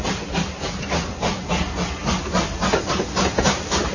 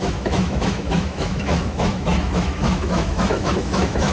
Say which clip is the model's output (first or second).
second